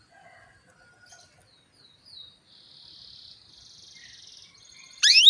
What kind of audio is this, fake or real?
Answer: real